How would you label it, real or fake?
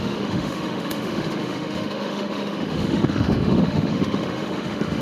fake